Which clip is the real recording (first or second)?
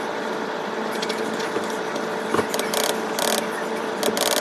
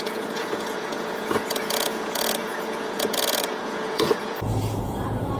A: first